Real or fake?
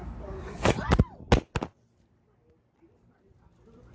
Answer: real